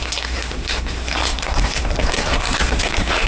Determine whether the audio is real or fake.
fake